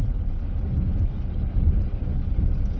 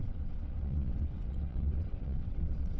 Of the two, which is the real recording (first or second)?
first